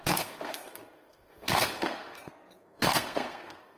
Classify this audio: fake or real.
fake